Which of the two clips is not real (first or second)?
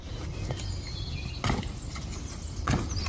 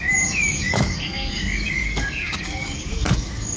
second